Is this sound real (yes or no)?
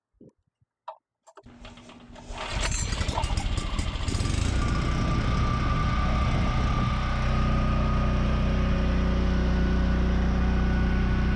yes